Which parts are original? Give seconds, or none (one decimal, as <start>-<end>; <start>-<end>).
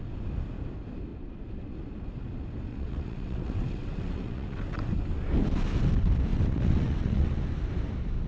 0.0-2.7; 4.9-6.3; 7.3-8.3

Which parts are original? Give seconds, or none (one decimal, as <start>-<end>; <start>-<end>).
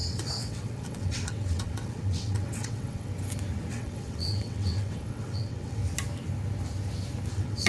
3.1-3.7; 5.8-7.3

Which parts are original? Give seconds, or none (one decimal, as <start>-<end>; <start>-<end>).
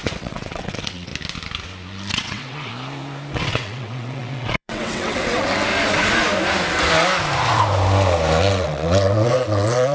1.1-2.1; 2.7-3.3; 5.7-8.5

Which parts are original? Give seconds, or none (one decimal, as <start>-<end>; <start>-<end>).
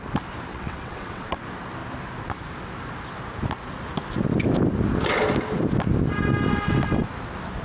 0.0-0.5; 1.4-7.6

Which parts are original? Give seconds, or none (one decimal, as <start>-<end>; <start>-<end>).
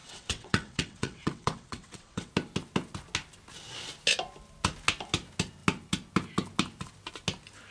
2.3-7.7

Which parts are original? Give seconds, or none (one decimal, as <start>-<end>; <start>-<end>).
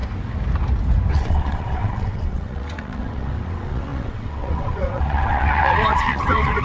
0.0-1.1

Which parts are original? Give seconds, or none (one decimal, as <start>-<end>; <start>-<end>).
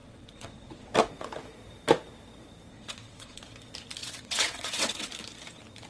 0.9-2.7; 3.4-4.0; 5.1-5.9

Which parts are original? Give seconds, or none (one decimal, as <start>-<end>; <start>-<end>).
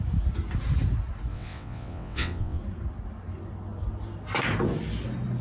0.0-1.3; 2.6-5.4